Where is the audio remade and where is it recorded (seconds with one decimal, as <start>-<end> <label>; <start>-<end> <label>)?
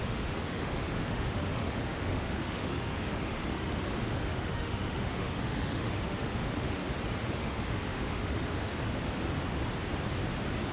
0.0-6.8 remade; 6.8-7.3 recorded; 7.3-8.7 remade; 8.7-10.7 recorded